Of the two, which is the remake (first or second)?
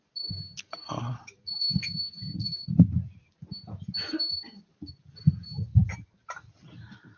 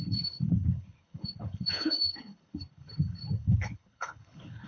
second